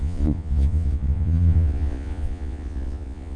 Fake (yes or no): yes